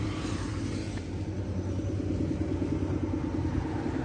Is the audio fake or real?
real